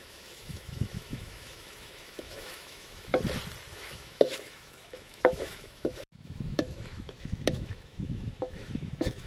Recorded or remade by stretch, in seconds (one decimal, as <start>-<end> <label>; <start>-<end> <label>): 0.0-3.1 remade; 3.1-3.7 recorded; 3.7-9.3 remade